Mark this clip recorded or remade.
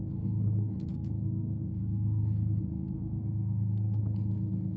remade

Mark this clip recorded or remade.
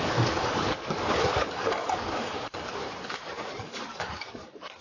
remade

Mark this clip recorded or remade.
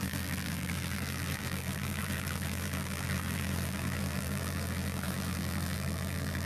remade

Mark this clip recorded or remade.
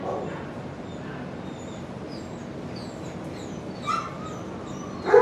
recorded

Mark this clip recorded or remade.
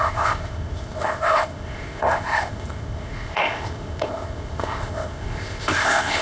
remade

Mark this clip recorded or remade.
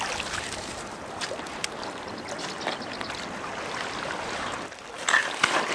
recorded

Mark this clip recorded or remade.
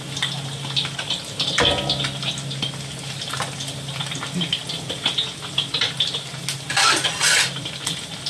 recorded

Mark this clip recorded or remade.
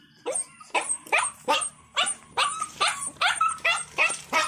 remade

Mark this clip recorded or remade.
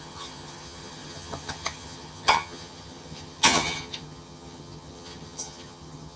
remade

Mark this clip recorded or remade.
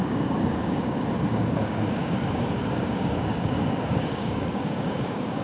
remade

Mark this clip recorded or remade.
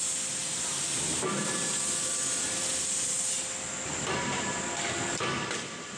recorded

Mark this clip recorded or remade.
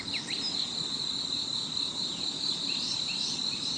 recorded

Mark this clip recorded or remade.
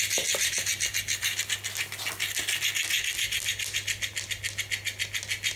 recorded